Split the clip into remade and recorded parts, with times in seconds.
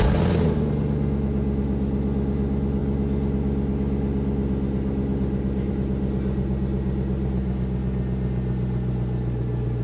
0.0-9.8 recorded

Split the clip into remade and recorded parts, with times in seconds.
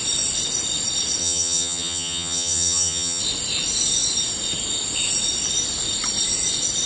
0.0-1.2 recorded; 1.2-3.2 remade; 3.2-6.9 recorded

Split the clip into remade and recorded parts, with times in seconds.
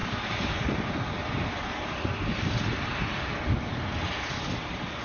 0.0-5.0 recorded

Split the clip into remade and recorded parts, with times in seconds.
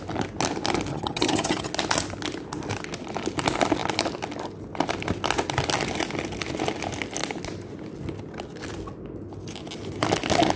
0.0-0.9 recorded; 0.9-1.7 remade; 1.7-10.6 recorded